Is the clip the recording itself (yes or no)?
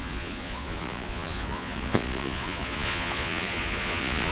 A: no